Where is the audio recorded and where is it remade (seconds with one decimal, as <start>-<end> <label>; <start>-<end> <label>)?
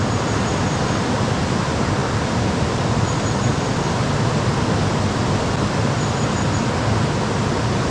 0.0-7.9 recorded